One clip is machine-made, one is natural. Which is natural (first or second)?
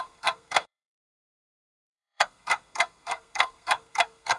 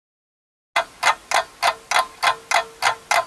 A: second